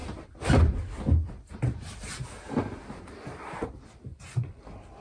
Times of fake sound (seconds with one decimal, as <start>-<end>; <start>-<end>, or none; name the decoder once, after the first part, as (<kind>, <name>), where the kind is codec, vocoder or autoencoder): 4.1-4.6 (vocoder, Vocos)